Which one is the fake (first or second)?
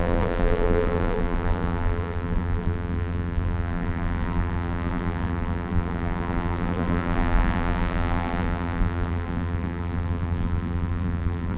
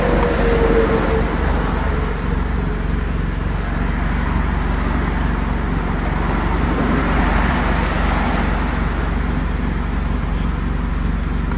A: first